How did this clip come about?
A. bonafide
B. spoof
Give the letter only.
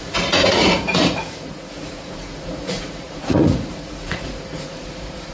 B